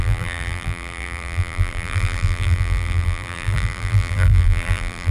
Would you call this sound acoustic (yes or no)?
no